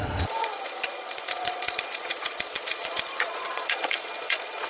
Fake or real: fake